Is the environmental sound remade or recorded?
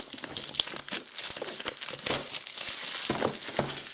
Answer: recorded